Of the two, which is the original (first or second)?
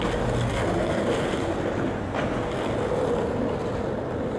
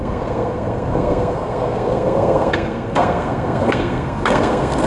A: first